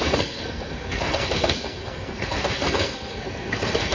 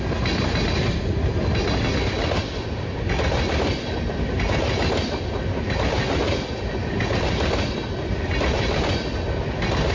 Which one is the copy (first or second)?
first